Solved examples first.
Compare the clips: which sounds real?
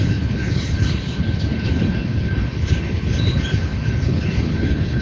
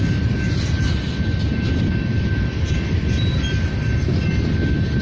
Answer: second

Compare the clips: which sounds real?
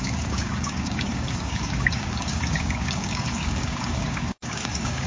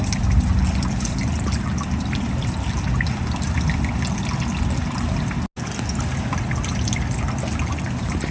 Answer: second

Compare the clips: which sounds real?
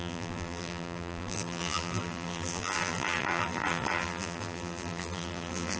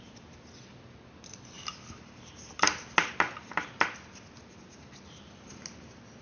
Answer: second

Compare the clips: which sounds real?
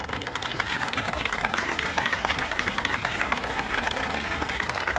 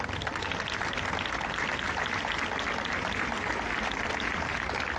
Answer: second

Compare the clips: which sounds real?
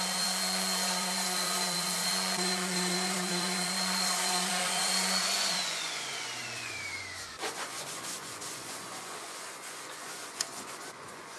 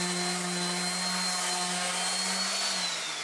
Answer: second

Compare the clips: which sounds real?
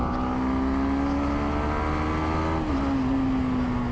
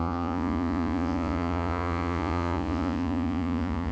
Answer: first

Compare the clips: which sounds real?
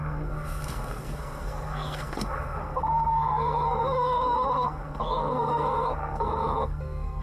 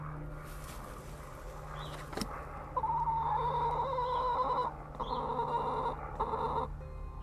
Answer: second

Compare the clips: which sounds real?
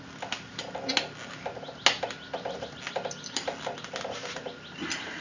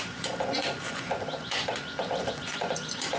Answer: first